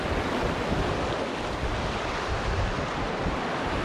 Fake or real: real